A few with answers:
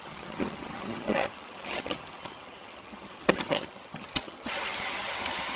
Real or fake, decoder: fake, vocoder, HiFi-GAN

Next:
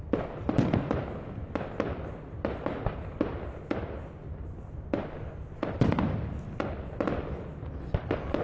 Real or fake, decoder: real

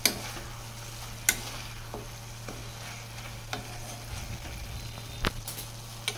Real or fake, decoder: real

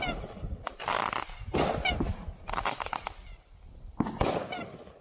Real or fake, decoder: real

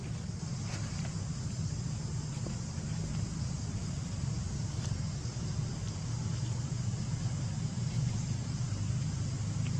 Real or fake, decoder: real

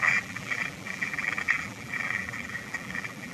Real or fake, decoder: fake, vocoder, BigVGAN v2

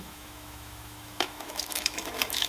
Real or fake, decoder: fake, autoencoder, DAC-VAE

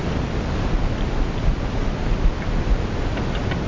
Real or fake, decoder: real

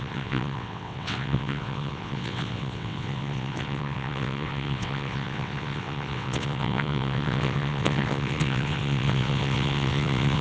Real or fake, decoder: fake, vocoder, WaveNeXt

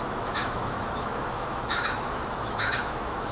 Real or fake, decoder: fake, autoencoder, DAC-VAE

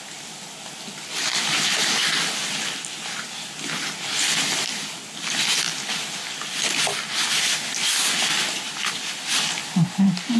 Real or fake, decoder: real